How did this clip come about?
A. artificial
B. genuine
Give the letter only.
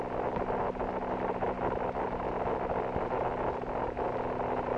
B